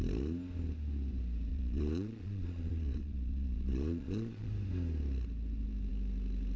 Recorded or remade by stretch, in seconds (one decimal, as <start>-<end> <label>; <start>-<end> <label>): 0.0-1.5 recorded; 1.5-4.5 remade; 4.5-6.6 recorded